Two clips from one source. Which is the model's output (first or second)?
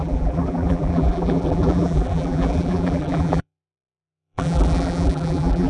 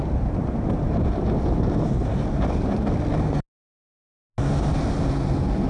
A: first